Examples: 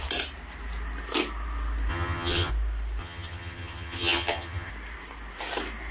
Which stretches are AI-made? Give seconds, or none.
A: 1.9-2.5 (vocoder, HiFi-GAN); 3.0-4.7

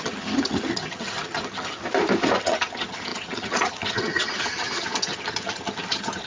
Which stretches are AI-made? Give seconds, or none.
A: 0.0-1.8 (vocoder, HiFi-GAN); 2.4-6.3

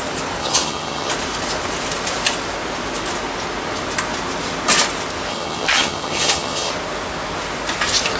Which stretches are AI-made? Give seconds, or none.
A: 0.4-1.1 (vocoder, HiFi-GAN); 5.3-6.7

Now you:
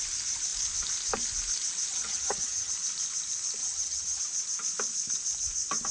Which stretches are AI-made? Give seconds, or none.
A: 1.9-2.7 (vocoder, HiFi-GAN); 3.6-4.2